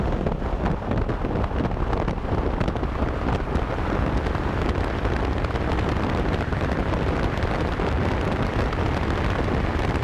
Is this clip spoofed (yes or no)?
no